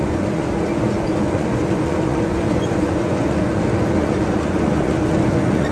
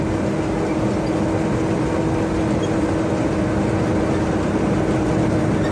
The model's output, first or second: first